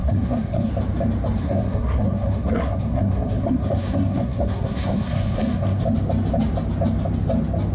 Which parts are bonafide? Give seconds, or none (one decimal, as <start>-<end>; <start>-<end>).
0.7-1.4; 5.8-7.7